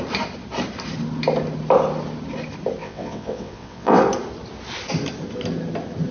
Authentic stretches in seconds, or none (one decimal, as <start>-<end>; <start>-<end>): 0.0-2.8; 4.0-6.1

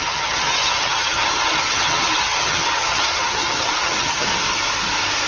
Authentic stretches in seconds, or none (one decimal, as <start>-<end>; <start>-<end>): 4.3-5.3

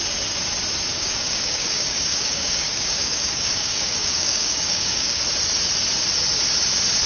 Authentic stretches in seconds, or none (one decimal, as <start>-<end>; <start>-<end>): 0.0-0.9; 5.2-7.1

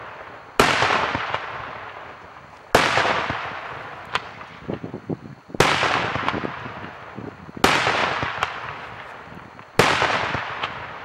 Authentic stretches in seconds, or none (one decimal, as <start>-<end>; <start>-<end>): 0.0-11.0